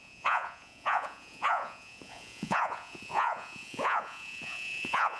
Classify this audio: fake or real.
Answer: fake